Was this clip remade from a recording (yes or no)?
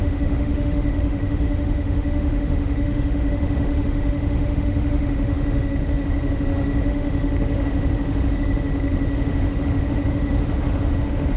yes